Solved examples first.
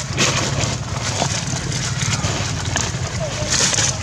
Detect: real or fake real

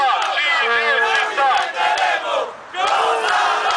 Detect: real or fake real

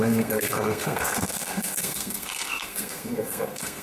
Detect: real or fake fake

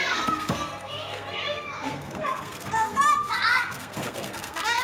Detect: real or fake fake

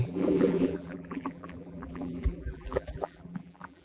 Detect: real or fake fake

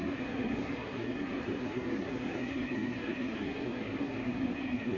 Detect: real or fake fake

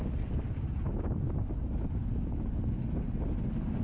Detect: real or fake real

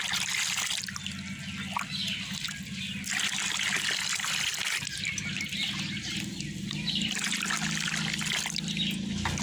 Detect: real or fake real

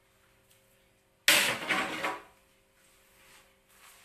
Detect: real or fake real